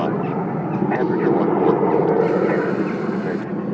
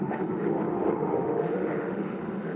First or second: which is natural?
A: first